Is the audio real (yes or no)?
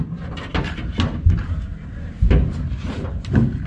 yes